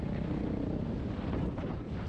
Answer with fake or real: real